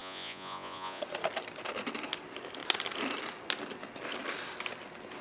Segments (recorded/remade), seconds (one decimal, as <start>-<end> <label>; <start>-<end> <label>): 0.0-1.0 remade; 1.0-5.2 recorded